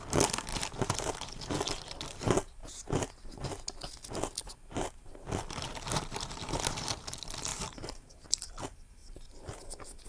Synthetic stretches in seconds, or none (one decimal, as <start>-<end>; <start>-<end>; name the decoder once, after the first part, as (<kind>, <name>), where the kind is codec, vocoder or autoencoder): 0.5-1.3 (vocoder, BigVGAN v2); 2.6-3.4; 7.5-8.6; 9.0-9.5